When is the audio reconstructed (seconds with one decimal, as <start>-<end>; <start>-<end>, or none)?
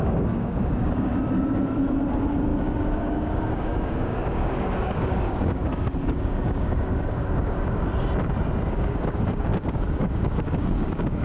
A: 0.0-1.1; 2.1-7.9; 8.7-11.2